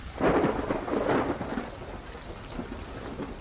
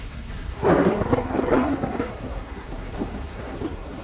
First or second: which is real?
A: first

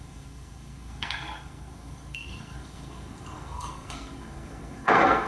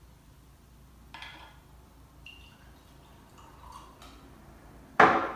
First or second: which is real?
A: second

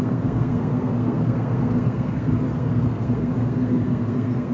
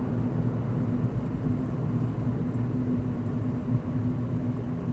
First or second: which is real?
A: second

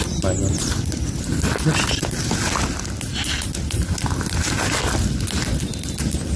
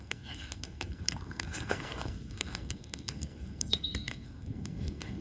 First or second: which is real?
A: first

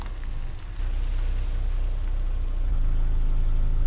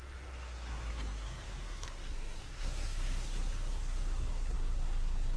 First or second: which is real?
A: first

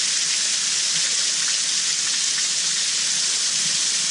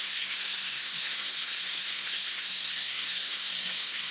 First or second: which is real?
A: first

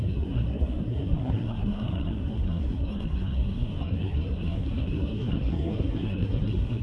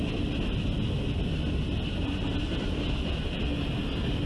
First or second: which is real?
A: second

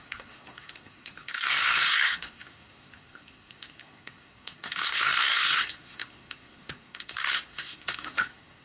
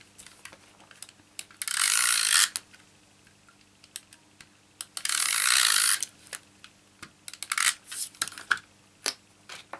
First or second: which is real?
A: second